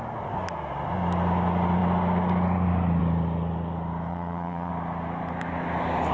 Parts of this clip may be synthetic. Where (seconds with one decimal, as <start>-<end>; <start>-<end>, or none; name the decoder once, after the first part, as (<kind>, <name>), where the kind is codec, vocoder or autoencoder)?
4.1-4.7 (vocoder, WaveNeXt)